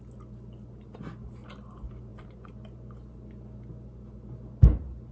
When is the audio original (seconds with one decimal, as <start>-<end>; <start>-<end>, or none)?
0.0-5.1